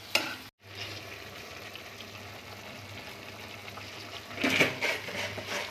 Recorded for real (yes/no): yes